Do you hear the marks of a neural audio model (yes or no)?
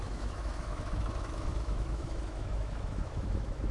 yes